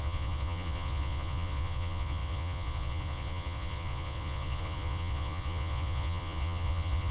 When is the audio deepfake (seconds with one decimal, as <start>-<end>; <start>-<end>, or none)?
0.0-7.1